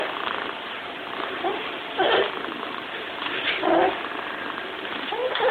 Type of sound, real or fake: real